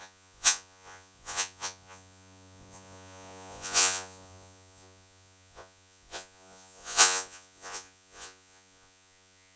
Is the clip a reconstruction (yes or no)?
yes